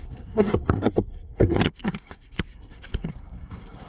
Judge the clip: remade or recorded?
remade